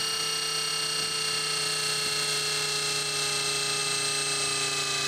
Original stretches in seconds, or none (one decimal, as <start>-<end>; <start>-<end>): 0.0-5.1